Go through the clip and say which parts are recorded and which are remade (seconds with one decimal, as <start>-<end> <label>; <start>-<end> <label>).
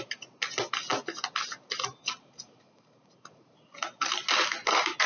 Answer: 0.0-5.1 recorded